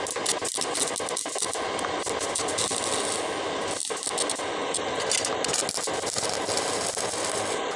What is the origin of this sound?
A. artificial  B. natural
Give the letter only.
B